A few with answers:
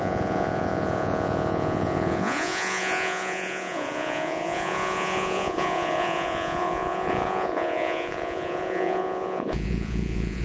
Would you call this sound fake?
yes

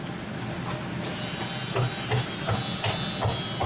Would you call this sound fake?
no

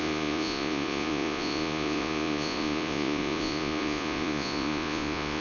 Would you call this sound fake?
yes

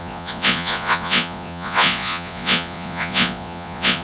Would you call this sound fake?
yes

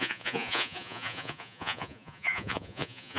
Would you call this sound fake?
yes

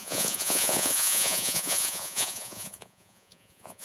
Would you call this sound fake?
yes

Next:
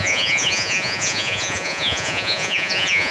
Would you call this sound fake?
yes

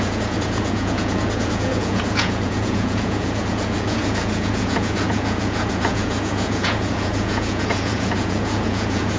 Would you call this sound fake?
yes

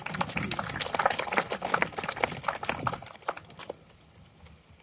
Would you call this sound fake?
no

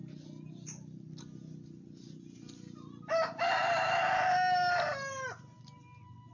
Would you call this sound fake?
no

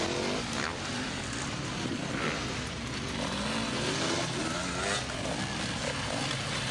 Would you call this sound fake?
no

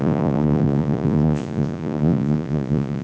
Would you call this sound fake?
yes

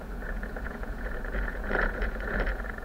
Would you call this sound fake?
yes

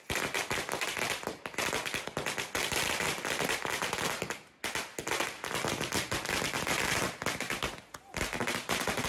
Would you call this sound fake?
no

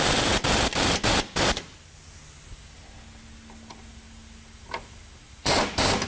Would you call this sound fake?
no